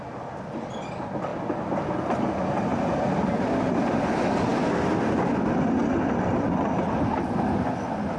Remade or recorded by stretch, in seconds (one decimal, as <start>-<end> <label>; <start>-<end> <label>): 0.0-8.2 recorded